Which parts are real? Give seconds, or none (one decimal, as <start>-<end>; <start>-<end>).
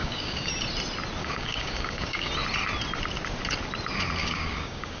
0.5-1.2; 2.3-4.2